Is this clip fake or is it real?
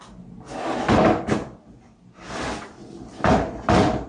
real